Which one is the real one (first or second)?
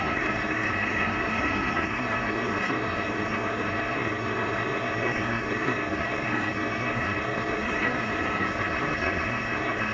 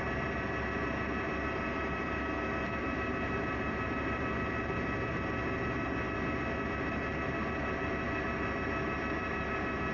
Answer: second